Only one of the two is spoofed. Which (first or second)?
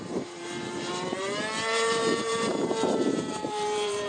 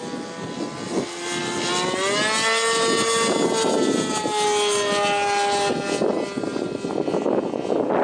first